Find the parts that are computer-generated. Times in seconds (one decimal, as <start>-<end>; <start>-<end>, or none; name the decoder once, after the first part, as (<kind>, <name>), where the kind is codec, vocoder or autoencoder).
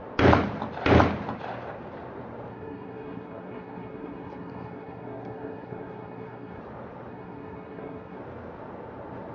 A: 2.5-6.6 (codec, SNAC); 7.1-8.2